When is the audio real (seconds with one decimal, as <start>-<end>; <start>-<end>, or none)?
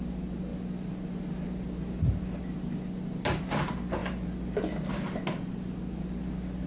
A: 0.0-6.7